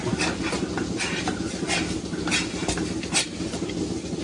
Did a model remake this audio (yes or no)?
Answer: no